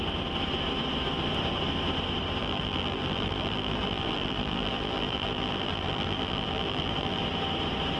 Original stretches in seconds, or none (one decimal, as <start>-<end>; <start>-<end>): 0.0-2.4; 7.2-8.0